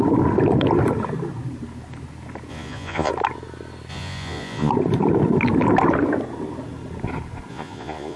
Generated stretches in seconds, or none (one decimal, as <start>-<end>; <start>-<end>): 2.5-3.1; 3.9-4.7; 7.5-8.2